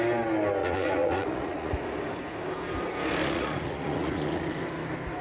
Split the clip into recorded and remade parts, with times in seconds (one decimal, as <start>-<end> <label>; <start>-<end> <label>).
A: 0.0-0.6 recorded; 0.6-1.7 remade; 1.7-3.2 recorded; 3.2-4.5 remade; 4.5-5.2 recorded